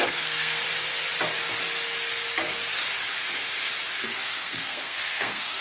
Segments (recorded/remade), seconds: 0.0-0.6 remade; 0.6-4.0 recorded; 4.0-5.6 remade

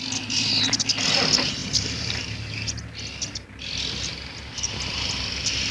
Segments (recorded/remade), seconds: 0.0-5.7 recorded

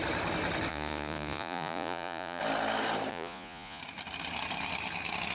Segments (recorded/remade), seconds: 0.0-0.7 recorded; 0.7-2.4 remade; 2.4-3.1 recorded; 3.1-3.8 remade; 3.8-5.3 recorded

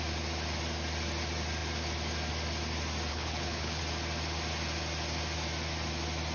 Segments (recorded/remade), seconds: 0.0-3.1 recorded; 3.1-3.8 remade; 3.8-6.3 recorded

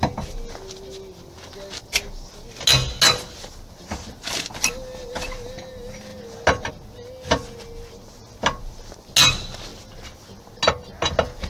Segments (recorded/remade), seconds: 0.0-11.5 recorded

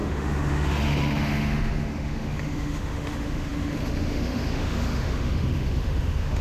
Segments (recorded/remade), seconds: 0.0-6.4 remade

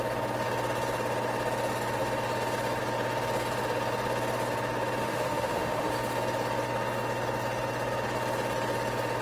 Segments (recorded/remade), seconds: 0.0-5.0 recorded; 5.0-5.9 remade; 5.9-9.2 recorded